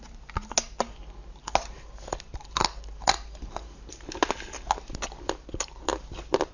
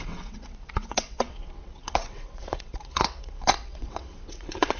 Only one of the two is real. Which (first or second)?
first